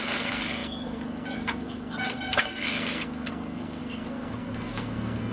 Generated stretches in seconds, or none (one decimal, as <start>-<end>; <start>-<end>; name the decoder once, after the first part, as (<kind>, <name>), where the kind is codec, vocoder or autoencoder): 0.0-5.3 (codec, SNAC)